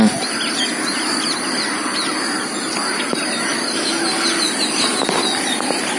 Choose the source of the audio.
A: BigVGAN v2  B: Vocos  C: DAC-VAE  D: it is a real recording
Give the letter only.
D